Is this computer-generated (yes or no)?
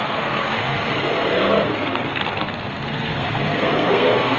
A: yes